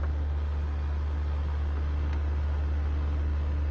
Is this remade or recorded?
recorded